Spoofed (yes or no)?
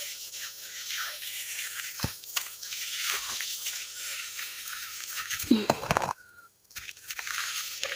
yes